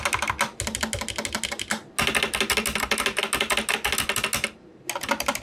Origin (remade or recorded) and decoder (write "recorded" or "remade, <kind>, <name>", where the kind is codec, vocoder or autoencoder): recorded